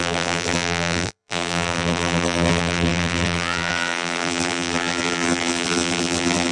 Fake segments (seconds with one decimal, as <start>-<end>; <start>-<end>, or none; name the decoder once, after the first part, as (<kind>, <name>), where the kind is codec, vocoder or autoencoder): 0.0-6.5 (vocoder, BigVGAN v2)